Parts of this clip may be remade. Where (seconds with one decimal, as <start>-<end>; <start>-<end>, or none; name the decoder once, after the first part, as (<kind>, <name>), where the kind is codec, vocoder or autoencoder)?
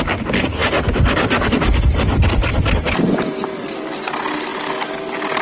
none